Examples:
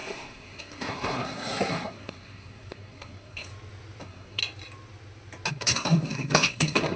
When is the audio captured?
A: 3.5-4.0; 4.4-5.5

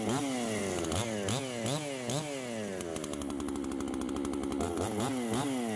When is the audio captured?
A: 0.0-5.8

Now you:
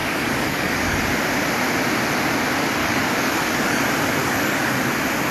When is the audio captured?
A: 1.0-2.8; 3.8-4.2; 4.7-5.3

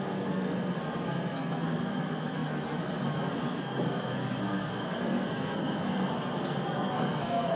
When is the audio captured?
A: none

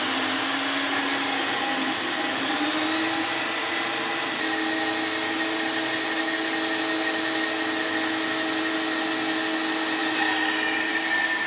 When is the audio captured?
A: 0.0-11.5